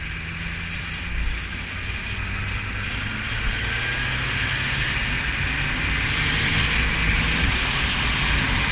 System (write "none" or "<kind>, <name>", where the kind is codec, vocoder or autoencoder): none